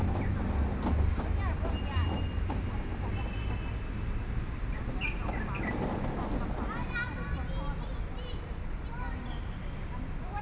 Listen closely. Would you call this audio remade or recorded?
recorded